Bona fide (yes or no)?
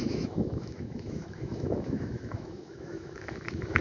no